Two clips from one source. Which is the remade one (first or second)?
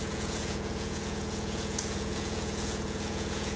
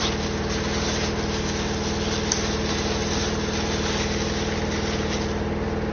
first